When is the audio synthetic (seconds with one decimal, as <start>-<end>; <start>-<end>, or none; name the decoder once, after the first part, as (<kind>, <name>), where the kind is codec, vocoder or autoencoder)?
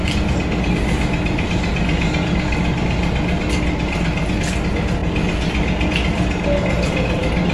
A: none